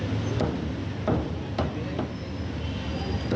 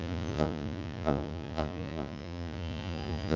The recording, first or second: first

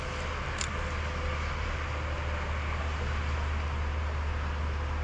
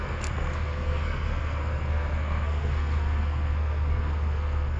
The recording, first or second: first